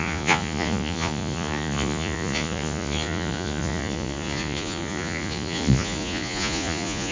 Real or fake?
fake